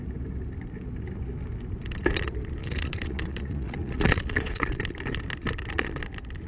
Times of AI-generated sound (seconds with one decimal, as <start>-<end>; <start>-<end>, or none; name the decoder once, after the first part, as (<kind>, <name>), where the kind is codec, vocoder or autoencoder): 2.6-4.8 (vocoder, Vocos)

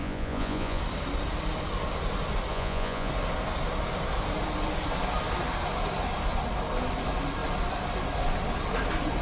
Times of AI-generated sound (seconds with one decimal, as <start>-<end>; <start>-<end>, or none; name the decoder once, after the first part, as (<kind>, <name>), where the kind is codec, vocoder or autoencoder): 0.0-0.8 (vocoder, Vocos); 2.5-3.1

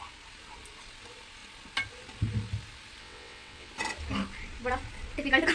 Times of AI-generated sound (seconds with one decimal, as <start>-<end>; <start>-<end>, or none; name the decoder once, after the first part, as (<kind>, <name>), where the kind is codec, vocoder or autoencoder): 3.0-3.7 (vocoder, WaveNeXt)

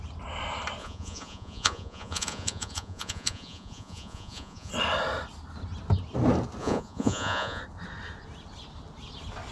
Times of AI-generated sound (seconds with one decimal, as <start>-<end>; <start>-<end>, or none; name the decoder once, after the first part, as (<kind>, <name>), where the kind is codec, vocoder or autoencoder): 0.8-4.7 (vocoder, Vocos); 6.6-7.6

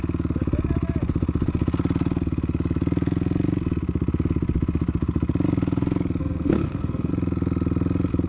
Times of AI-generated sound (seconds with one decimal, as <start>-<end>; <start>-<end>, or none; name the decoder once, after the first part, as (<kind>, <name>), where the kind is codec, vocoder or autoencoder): 6.2-7.1 (codec, SNAC)

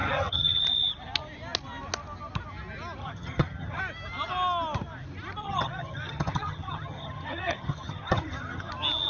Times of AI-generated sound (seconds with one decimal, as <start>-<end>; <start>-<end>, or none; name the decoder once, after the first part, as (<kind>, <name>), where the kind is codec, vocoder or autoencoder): 0.0-0.6 (vocoder, HiFi-GAN); 3.0-3.8; 5.4-8.7

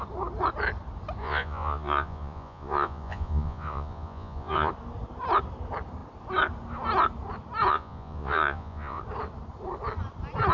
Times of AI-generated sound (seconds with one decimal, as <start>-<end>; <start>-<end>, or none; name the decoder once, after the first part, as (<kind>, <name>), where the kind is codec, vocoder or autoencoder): 1.2-4.7 (vocoder, Vocos); 7.7-9.0

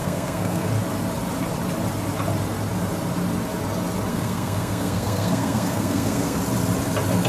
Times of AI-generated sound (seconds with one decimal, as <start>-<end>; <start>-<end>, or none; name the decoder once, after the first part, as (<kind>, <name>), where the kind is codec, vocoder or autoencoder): 0.0-0.7 (codec, SNAC); 4.1-6.4